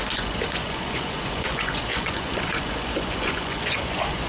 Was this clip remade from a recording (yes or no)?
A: yes